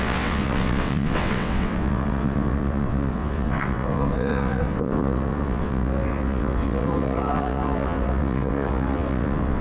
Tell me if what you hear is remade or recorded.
remade